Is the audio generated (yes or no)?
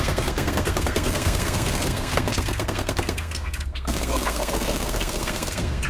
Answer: yes